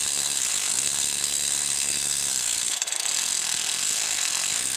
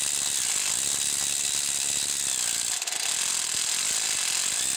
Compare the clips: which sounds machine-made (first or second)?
first